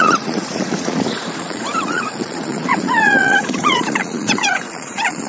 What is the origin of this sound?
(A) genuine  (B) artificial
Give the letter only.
B